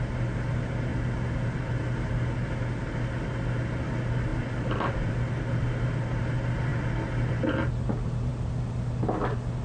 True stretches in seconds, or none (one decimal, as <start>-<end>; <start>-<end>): 0.9-2.1; 6.7-7.3; 8.3-9.2